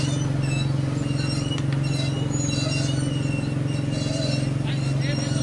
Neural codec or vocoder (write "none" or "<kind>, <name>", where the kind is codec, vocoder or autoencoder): none